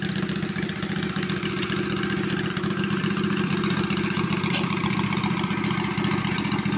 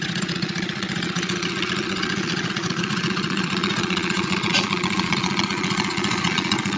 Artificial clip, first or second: second